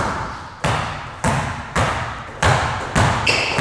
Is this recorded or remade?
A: recorded